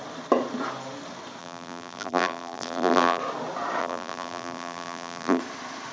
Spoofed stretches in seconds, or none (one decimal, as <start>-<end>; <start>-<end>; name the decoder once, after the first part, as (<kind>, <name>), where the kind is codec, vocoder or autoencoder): 1.4-3.2 (vocoder, BigVGAN v2); 3.8-5.4